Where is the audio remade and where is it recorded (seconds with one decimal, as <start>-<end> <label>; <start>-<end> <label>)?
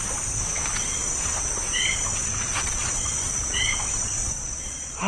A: 0.0-2.2 recorded; 2.2-3.6 remade; 3.6-4.1 recorded; 4.1-5.1 remade